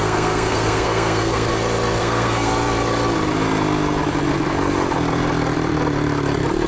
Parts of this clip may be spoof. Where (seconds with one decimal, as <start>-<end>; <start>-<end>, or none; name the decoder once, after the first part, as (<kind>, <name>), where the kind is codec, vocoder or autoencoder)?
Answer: 0.0-1.5 (codec, SNAC); 2.0-2.5